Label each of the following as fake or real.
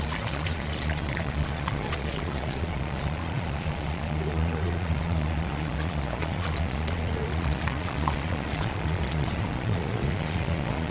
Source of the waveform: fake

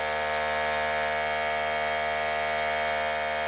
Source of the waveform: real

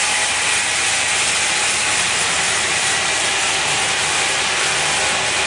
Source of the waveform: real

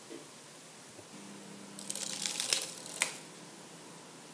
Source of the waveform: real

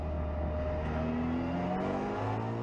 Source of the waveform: real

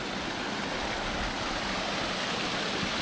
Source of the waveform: real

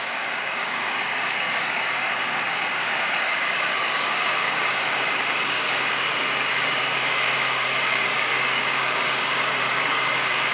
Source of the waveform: fake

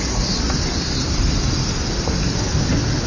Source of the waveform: real